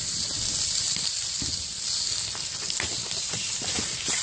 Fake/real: real